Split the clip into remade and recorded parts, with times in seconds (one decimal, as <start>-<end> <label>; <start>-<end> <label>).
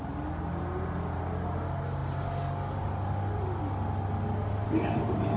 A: 0.0-5.4 recorded